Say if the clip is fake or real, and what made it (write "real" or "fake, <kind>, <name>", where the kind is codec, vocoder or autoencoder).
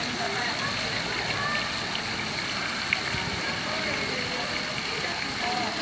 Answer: real